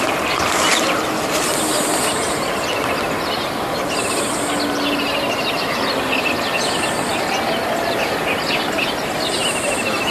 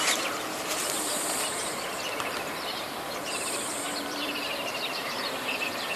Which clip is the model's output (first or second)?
second